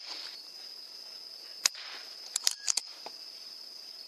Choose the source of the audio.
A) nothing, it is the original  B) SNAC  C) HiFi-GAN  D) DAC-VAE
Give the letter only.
A